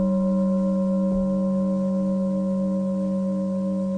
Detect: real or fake real